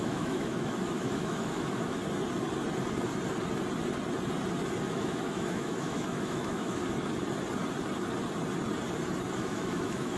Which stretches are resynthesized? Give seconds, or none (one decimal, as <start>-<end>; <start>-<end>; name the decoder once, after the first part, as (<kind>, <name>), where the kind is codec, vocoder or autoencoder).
0.0-2.0 (autoencoder, DAC-VAE); 4.9-6.8; 9.3-10.2